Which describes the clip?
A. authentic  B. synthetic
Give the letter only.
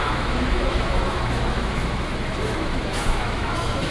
B